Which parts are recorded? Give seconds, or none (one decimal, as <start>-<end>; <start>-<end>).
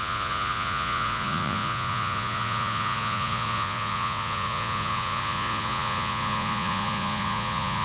none